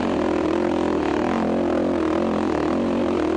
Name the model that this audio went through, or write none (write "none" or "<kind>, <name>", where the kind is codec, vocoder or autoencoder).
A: none